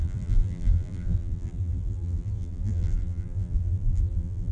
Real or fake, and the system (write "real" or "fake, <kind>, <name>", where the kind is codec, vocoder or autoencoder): fake, vocoder, BigVGAN v2